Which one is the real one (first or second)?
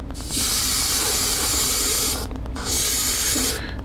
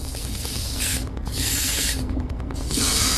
first